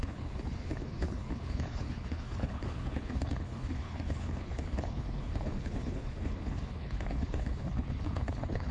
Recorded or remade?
remade